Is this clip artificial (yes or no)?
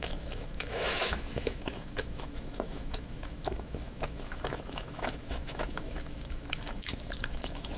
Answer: yes